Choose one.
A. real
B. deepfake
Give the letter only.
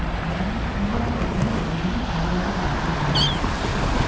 A